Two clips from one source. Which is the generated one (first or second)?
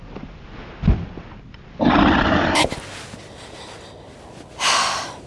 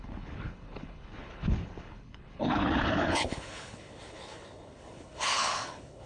second